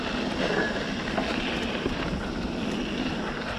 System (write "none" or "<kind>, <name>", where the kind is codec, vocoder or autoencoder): none